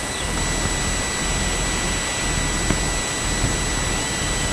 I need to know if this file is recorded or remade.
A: recorded